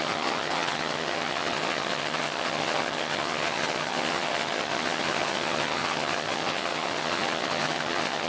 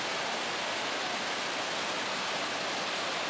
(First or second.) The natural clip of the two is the second